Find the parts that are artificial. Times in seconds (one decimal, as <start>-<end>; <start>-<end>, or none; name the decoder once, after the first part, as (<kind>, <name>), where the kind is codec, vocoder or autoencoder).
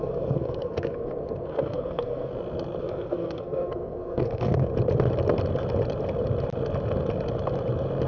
0.0-2.3 (codec, SNAC); 2.8-4.7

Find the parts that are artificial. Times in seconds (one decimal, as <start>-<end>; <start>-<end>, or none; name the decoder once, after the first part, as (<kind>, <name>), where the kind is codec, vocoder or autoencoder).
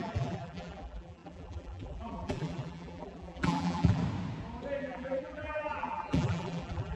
0.0-4.0 (vocoder, BigVGAN v2); 4.8-7.0